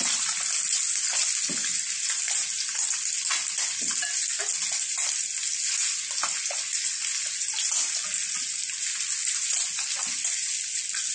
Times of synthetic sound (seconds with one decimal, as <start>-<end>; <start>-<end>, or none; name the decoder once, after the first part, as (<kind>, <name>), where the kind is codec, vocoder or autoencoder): none